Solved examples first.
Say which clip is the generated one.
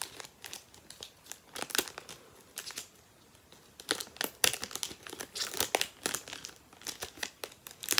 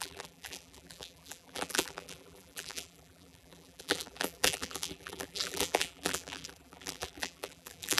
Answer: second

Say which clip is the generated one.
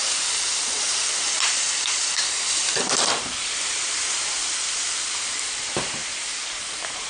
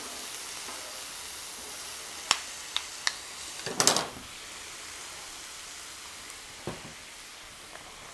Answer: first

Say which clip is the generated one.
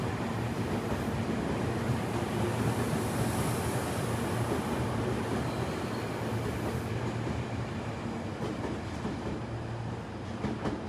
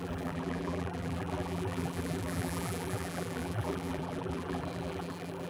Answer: second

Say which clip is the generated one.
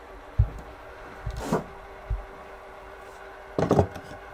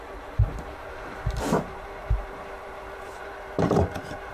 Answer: second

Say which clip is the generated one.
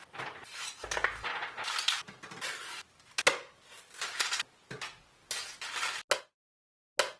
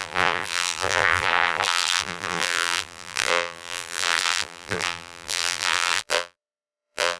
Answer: second